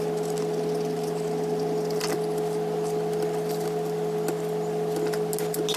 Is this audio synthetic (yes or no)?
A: no